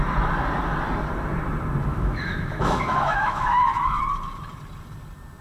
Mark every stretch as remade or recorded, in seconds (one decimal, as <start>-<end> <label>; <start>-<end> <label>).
0.0-1.9 recorded; 1.9-4.0 remade; 4.0-5.4 recorded

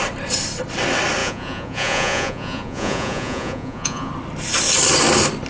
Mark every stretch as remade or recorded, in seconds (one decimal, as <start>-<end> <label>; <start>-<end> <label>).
0.0-1.2 recorded; 1.2-4.1 remade; 4.1-5.5 recorded

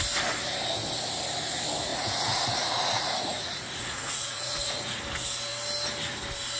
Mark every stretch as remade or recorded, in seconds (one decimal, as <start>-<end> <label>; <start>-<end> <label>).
0.0-1.9 recorded; 1.9-5.0 remade; 5.0-6.6 recorded

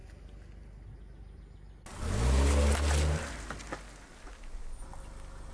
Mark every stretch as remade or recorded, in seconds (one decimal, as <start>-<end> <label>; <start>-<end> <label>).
0.0-5.5 recorded

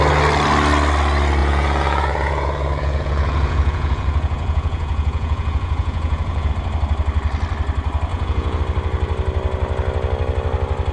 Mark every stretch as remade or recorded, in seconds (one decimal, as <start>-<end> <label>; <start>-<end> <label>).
0.0-1.4 recorded; 1.4-6.5 remade; 6.5-8.1 recorded; 8.1-8.6 remade; 8.6-10.9 recorded

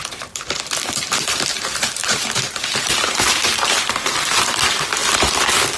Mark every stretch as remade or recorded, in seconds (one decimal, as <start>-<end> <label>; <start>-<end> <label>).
0.0-5.0 remade; 5.0-5.8 recorded